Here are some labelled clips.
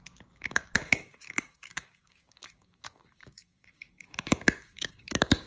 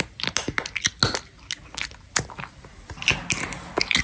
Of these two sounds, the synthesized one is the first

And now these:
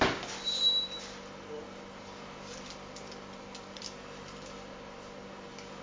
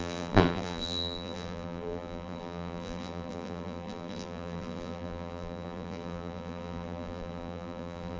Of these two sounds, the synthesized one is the second